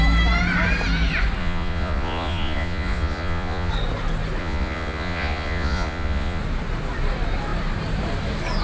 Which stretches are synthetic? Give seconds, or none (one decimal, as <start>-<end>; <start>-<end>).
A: 1.4-3.7; 4.4-6.4